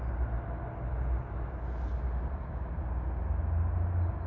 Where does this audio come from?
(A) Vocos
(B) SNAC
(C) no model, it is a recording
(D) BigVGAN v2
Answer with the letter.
C